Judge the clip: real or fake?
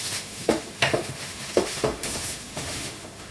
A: fake